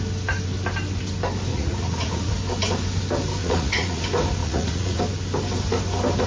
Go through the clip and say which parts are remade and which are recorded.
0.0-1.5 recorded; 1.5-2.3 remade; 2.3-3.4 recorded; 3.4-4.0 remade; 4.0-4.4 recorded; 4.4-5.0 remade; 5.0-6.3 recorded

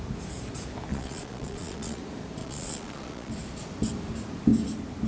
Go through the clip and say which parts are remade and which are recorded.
0.0-0.9 recorded; 0.9-2.0 remade; 2.0-2.4 recorded; 2.4-3.3 remade; 3.3-5.1 recorded

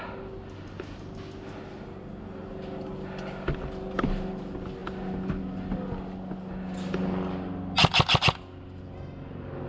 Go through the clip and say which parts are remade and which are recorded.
0.0-9.7 recorded

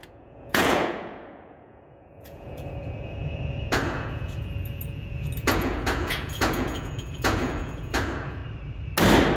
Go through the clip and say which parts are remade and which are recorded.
0.0-8.4 remade; 8.4-9.4 recorded

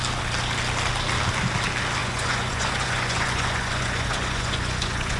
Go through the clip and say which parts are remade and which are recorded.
0.0-2.0 recorded; 2.0-5.2 remade

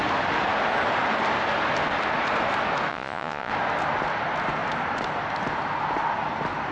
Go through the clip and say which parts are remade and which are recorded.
0.0-2.9 recorded; 2.9-3.5 remade; 3.5-6.7 recorded

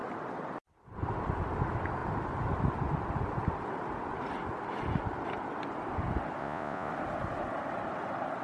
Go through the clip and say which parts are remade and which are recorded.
0.0-6.4 recorded; 6.4-6.9 remade; 6.9-8.4 recorded